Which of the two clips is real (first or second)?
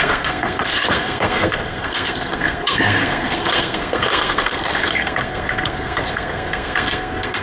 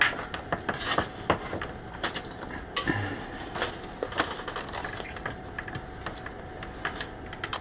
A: second